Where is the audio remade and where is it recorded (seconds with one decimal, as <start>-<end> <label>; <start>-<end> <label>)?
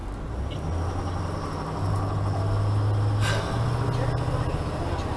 0.0-1.9 recorded; 1.9-2.4 remade; 2.4-5.2 recorded